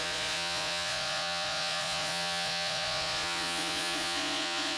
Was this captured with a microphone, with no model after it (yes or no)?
no